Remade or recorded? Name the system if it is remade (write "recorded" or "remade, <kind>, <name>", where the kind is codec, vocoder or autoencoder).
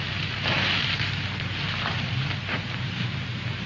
recorded